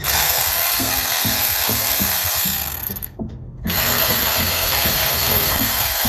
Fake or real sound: fake